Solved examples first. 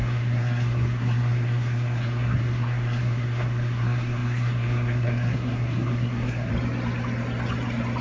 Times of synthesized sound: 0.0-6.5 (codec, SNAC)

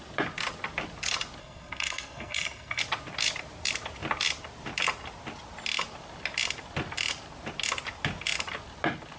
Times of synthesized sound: 1.4-2.8 (codec, SNAC)

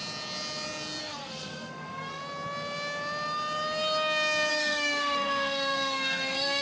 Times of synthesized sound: 1.0-2.2 (codec, SNAC); 4.5-6.6

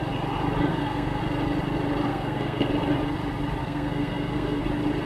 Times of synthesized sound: 0.7-1.2 (codec, SNAC); 2.1-2.7; 3.6-4.6

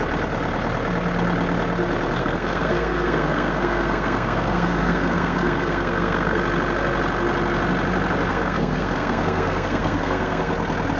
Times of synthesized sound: 2.2-6.4 (codec, SNAC); 8.3-10.5

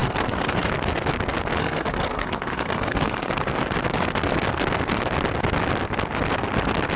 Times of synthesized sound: 0.0-0.7 (codec, SNAC); 1.6-3.3

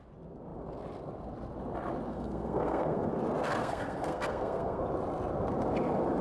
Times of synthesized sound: 2.1-3.1 (codec, SNAC); 3.6-4.8

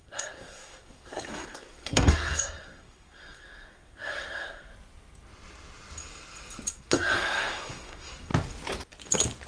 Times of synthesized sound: 0.0-4.7 (codec, SNAC); 6.7-8.3